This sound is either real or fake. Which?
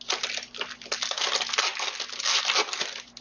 real